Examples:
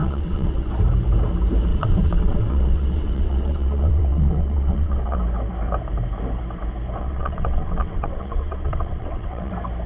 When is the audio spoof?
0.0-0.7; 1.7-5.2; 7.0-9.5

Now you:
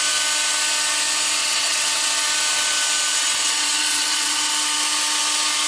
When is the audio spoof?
1.4-2.1; 3.1-4.5